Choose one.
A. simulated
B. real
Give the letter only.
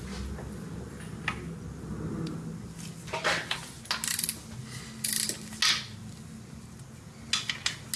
B